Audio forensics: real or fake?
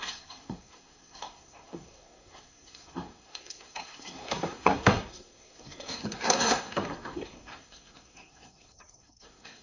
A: fake